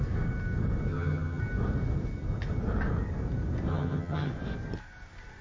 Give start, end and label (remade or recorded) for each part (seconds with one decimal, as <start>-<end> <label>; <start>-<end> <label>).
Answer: 0.0-0.9 recorded; 0.9-1.4 remade; 1.4-3.7 recorded; 3.7-4.3 remade; 4.3-5.4 recorded